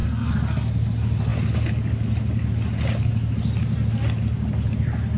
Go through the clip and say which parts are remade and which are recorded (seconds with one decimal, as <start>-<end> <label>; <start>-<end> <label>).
0.0-0.7 remade; 0.7-5.2 recorded